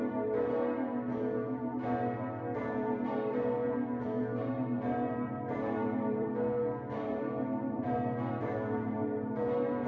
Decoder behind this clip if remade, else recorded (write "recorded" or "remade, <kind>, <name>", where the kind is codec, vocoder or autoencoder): remade, vocoder, BigVGAN v2